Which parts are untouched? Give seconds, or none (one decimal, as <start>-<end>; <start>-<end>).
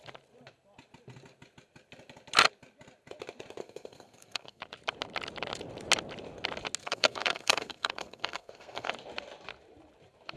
0.0-3.6; 4.6-6.8; 8.9-10.4